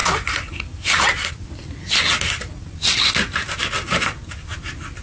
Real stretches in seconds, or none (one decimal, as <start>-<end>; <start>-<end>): 0.0-5.0